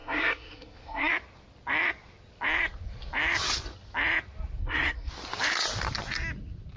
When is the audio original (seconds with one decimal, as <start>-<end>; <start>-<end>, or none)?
1.1-4.6; 5.1-6.8